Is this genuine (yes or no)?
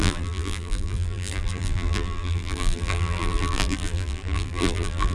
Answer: no